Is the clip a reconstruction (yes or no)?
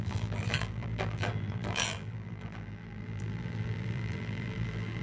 yes